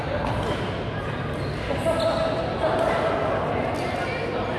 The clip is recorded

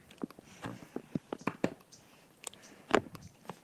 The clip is remade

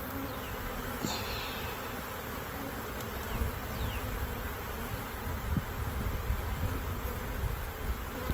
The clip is recorded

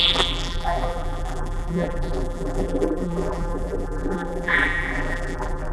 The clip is remade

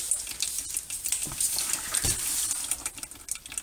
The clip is recorded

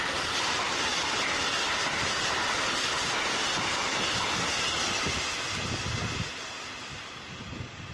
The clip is recorded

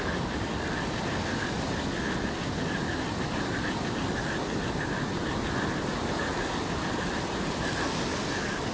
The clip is recorded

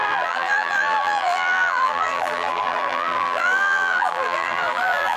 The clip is remade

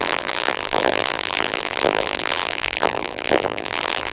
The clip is remade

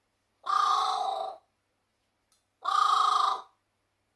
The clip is recorded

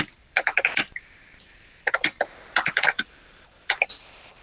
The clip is remade